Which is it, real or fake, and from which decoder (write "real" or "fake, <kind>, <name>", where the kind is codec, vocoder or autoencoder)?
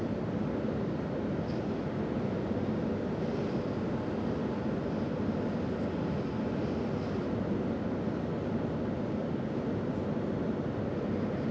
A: real